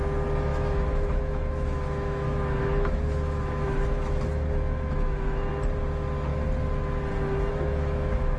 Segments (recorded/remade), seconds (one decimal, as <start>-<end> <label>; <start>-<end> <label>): 0.0-0.5 recorded; 0.5-5.5 remade; 5.5-7.5 recorded; 7.5-8.4 remade

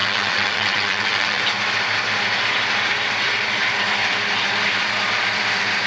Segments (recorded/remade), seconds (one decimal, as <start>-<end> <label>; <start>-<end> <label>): 0.0-1.4 remade; 1.4-5.9 recorded

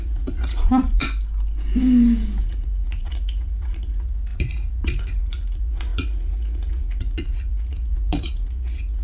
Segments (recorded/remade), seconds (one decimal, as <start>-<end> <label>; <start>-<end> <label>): 0.0-1.0 remade; 1.0-2.4 recorded; 2.4-9.0 remade

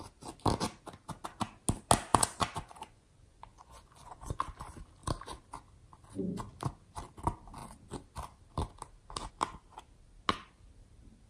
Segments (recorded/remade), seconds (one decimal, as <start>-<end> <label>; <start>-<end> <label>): 0.0-2.1 recorded; 2.1-4.4 remade; 4.4-11.3 recorded

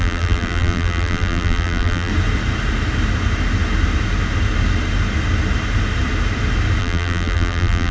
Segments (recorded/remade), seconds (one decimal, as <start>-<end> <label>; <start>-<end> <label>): 0.0-2.1 remade; 2.1-6.8 recorded; 6.8-7.9 remade

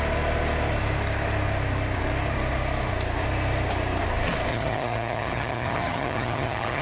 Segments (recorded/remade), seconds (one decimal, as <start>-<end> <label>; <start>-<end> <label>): 0.0-4.5 recorded; 4.5-6.8 remade

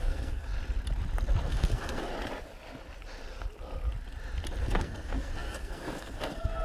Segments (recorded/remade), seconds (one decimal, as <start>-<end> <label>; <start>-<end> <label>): 0.0-0.5 remade; 0.5-1.5 recorded; 1.5-2.1 remade; 2.1-4.6 recorded; 4.6-6.6 remade